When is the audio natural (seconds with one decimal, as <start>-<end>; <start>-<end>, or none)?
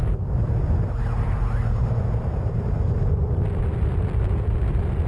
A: 0.0-5.1